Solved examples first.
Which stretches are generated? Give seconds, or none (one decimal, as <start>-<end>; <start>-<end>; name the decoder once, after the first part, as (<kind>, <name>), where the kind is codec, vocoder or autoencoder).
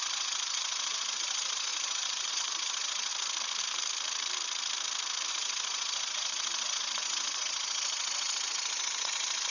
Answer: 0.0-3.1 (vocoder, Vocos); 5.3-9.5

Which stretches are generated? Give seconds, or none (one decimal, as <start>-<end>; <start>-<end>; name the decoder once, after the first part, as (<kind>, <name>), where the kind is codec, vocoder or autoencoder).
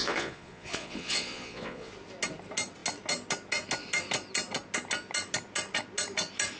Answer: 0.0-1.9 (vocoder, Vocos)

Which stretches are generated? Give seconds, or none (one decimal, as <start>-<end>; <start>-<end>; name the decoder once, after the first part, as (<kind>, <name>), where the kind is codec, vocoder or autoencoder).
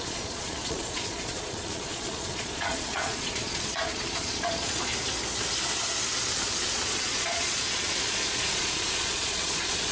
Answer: 0.0-4.9 (vocoder, Vocos); 6.3-9.9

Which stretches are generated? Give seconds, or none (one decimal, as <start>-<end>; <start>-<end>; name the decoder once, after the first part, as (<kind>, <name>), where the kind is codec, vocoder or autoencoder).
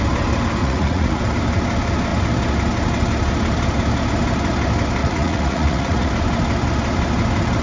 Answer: 0.6-1.2 (vocoder, Vocos); 5.0-6.1